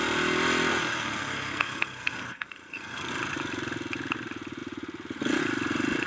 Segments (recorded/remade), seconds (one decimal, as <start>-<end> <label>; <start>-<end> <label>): 0.0-0.7 recorded; 0.7-3.1 remade; 3.1-6.1 recorded